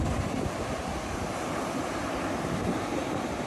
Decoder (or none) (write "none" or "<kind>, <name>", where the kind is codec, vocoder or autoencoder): none